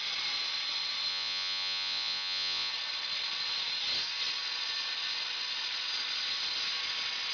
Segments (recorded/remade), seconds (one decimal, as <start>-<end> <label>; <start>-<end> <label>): 0.0-1.1 recorded; 1.1-2.7 remade; 2.7-7.3 recorded